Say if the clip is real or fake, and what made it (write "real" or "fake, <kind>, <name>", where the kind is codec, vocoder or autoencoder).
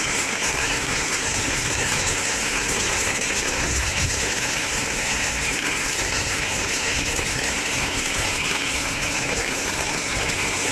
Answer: fake, codec, SNAC